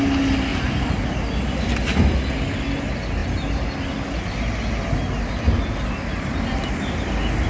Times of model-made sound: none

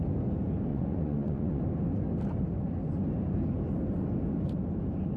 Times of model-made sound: 0.7-1.6 (vocoder, Vocos)

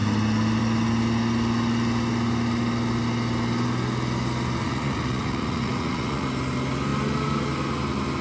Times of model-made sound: 4.6-6.3 (vocoder, Vocos)

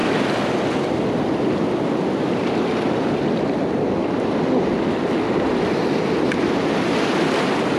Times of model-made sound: none

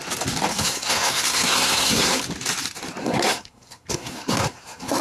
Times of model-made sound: 0.5-2.2 (codec, SNAC); 3.0-5.0

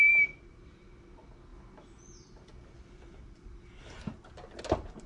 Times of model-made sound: none